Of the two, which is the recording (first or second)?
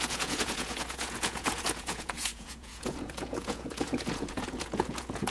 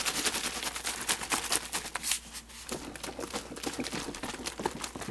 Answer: second